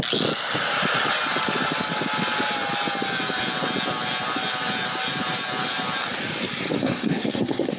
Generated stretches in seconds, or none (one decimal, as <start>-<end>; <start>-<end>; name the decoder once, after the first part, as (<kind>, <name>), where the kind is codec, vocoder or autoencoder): 6.8-7.8 (codec, SNAC)